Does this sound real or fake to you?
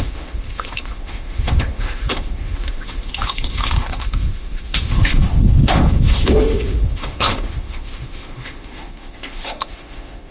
fake